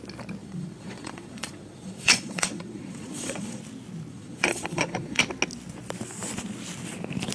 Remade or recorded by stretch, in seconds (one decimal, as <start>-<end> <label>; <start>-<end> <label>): 0.0-0.4 recorded; 0.4-3.6 remade; 3.6-4.1 recorded; 4.1-5.2 remade; 5.2-7.3 recorded